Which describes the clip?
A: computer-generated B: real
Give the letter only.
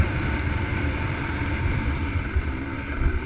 A